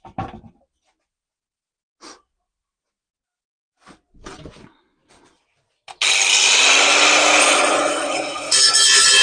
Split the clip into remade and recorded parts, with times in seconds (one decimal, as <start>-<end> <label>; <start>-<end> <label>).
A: 0.0-7.4 recorded; 7.4-8.5 remade; 8.5-9.2 recorded